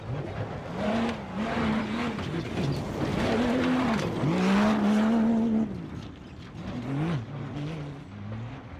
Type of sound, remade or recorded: recorded